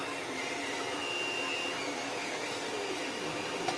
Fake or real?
real